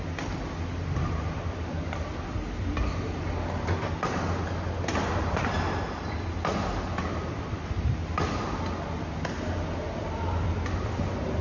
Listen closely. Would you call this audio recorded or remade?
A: recorded